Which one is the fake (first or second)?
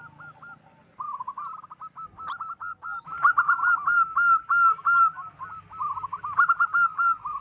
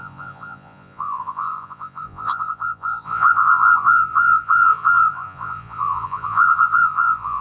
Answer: second